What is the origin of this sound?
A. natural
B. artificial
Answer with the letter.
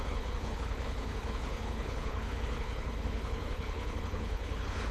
B